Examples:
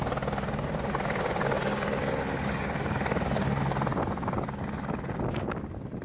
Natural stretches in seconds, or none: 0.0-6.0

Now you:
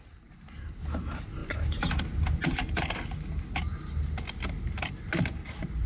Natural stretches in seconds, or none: 0.0-5.9